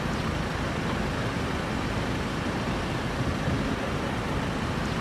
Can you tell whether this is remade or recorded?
recorded